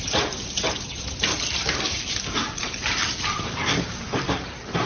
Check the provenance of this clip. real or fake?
fake